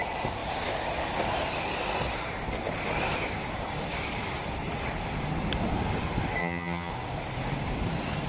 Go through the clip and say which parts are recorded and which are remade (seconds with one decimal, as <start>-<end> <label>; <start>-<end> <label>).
0.0-6.4 recorded; 6.4-6.9 remade; 6.9-8.3 recorded